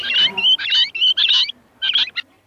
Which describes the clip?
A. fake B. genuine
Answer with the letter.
B